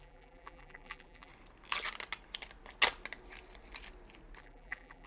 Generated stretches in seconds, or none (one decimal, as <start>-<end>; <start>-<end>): 0.0-1.3; 4.4-5.1